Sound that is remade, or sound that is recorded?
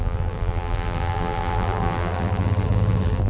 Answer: remade